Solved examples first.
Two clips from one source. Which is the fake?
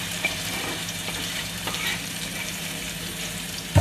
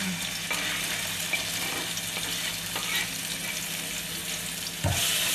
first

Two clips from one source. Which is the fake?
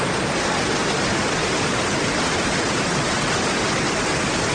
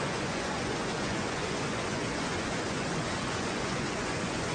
second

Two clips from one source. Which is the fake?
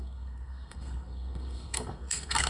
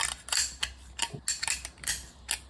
first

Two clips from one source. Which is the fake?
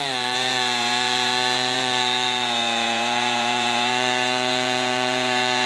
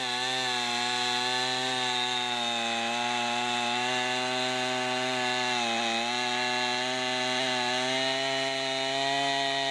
first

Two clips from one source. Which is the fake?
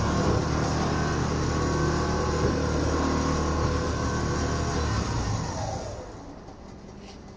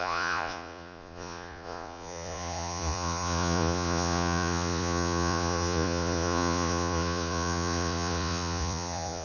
second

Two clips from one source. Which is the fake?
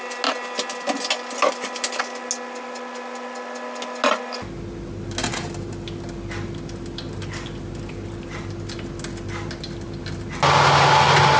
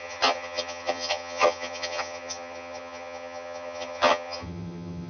second